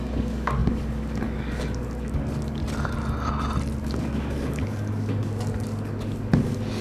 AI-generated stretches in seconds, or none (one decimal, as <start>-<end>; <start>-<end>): 0.0-2.6; 3.8-6.8